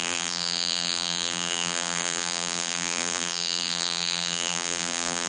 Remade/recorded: remade